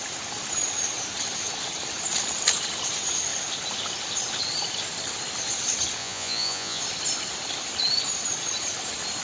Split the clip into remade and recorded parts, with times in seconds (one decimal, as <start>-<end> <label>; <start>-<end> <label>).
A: 0.0-6.0 recorded; 6.0-6.8 remade; 6.8-9.2 recorded